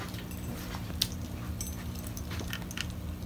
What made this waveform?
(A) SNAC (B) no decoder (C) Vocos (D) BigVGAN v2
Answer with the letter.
B